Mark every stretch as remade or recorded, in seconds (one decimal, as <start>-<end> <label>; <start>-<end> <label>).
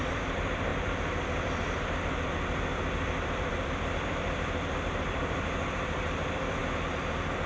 0.0-7.5 remade